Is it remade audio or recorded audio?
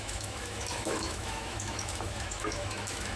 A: remade